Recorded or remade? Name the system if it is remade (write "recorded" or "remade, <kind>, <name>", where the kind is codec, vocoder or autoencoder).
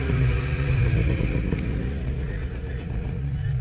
remade, vocoder, Vocos